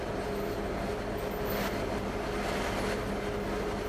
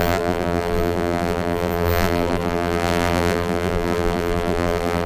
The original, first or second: first